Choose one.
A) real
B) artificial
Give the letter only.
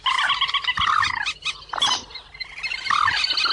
A